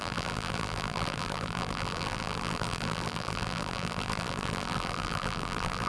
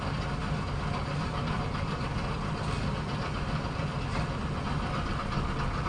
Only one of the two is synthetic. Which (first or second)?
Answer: first